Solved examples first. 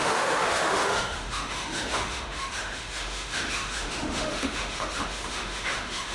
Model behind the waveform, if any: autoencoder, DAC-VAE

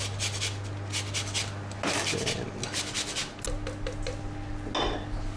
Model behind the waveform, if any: none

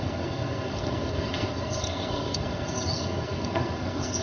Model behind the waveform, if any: codec, SNAC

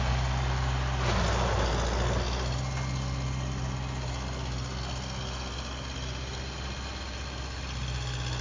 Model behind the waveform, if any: none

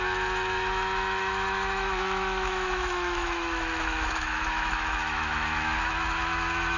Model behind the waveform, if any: autoencoder, DAC-VAE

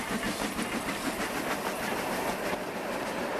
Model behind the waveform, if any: none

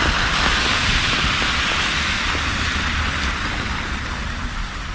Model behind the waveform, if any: vocoder, BigVGAN v2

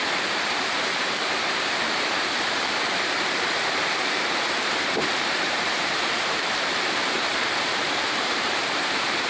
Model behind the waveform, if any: vocoder, BigVGAN v2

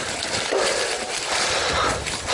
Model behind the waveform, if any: none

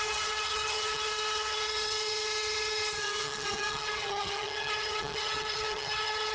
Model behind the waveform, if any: vocoder, HiFi-GAN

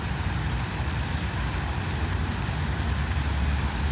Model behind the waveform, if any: vocoder, BigVGAN v2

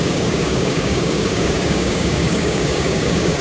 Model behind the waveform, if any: codec, DAC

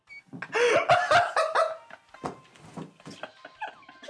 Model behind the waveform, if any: none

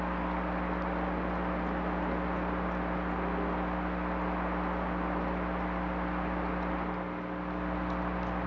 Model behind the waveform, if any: none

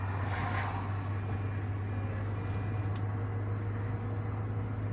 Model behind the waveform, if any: none